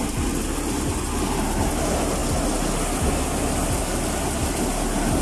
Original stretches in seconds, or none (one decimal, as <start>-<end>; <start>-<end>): 0.0-5.2